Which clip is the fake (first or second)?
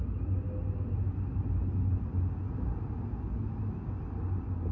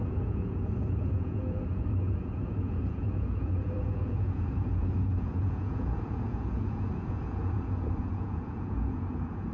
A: second